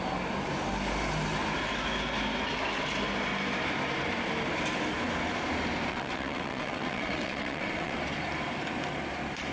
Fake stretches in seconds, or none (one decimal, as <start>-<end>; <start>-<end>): 5.9-8.0